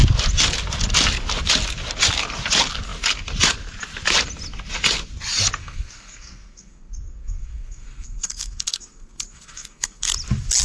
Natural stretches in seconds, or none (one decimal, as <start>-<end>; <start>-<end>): 0.0-5.6; 10.1-10.6